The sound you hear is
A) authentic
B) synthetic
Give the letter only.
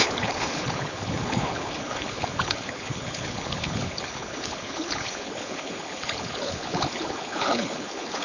B